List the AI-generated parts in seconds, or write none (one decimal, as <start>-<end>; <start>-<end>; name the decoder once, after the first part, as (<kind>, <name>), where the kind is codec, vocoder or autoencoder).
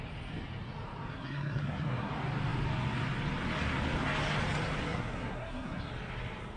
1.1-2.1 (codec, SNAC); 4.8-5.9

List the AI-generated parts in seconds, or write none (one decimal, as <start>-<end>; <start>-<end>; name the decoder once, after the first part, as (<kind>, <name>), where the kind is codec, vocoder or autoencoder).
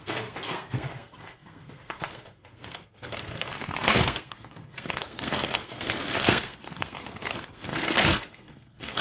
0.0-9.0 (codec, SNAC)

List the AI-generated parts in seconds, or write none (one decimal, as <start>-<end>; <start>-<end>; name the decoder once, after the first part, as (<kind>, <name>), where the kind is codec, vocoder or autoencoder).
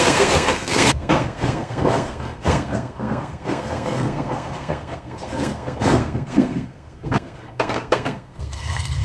0.0-9.0 (codec, SNAC)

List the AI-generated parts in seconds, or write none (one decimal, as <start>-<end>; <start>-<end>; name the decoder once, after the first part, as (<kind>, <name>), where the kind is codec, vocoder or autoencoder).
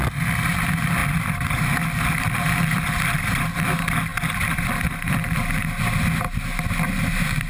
none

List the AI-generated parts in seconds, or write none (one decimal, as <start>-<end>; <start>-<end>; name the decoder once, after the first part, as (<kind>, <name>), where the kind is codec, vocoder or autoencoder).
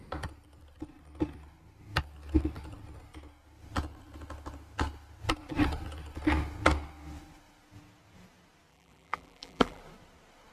8.7-9.8 (vocoder, BigVGAN v2)